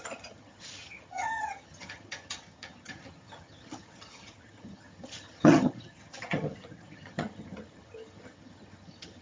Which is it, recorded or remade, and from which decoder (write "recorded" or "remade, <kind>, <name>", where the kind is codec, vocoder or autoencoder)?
remade, vocoder, HiFi-GAN